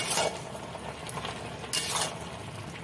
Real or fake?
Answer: real